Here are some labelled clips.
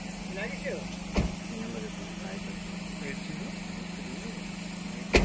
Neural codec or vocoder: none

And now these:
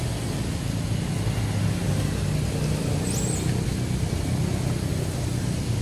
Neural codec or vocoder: none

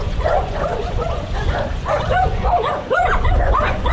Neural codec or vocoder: vocoder, Vocos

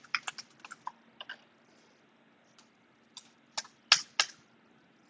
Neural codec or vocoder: none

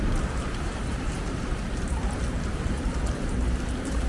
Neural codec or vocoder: vocoder, BigVGAN v2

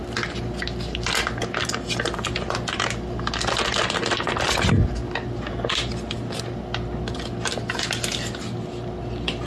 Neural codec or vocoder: none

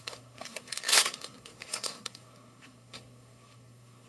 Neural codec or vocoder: codec, SNAC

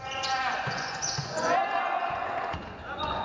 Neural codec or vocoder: vocoder, Vocos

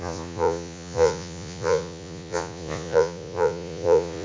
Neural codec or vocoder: vocoder, Vocos